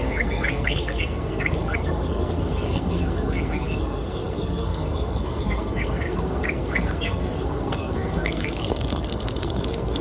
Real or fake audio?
fake